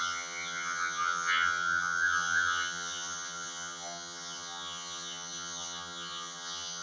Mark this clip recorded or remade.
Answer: remade